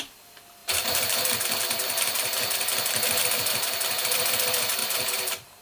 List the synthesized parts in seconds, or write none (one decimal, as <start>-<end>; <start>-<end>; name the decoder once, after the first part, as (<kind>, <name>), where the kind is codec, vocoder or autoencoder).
0.6-4.0 (vocoder, BigVGAN v2); 4.8-5.6